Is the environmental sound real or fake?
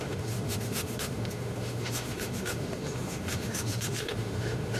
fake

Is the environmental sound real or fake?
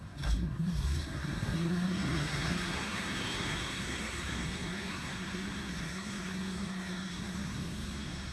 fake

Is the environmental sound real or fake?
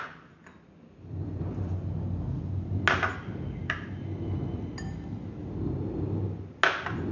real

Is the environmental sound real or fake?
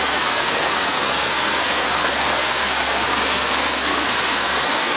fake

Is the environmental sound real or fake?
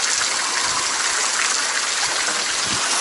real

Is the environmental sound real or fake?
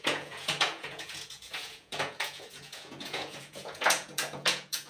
fake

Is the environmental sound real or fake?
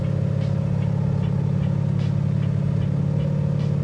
real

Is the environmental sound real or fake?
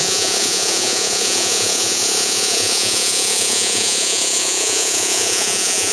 fake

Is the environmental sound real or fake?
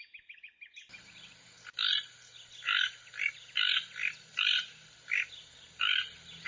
real